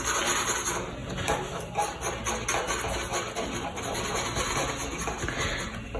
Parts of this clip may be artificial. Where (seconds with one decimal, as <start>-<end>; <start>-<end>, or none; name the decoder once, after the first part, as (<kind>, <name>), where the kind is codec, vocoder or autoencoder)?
none